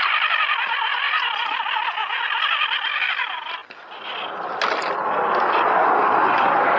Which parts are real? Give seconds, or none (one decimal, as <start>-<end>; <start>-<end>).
0.0-6.8